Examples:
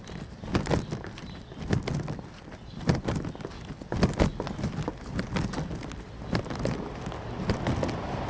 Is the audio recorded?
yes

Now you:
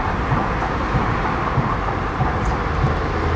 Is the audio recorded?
yes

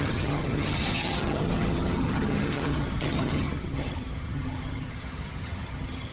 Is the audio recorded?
no